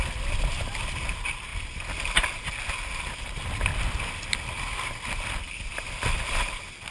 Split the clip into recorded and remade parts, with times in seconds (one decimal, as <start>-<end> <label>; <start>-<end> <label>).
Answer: 0.0-1.5 remade; 1.5-2.7 recorded; 2.7-3.7 remade; 3.7-4.3 recorded; 4.3-6.9 remade